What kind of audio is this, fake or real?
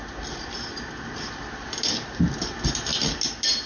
real